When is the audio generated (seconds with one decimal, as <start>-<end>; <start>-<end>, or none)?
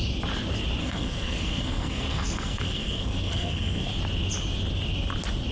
0.8-3.9